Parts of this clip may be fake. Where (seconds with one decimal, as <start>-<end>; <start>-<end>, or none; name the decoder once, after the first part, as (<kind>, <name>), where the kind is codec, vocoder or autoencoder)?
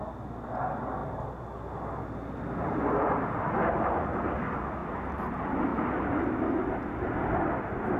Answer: none